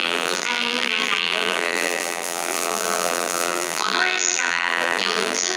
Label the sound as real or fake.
fake